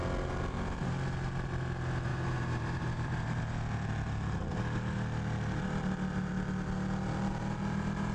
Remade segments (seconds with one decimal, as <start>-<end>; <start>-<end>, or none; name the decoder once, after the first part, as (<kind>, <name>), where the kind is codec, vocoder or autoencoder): 2.1-3.4 (vocoder, BigVGAN v2)